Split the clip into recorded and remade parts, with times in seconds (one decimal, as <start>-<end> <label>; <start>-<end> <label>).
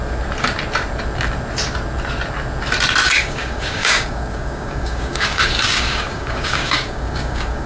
0.0-3.0 recorded; 3.0-7.7 remade